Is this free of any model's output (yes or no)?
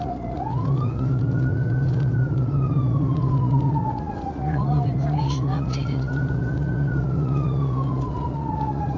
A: no